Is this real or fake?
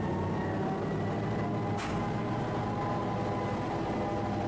real